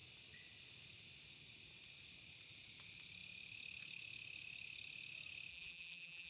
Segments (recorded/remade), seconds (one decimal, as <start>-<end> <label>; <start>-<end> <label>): 0.0-5.5 recorded; 5.5-6.3 remade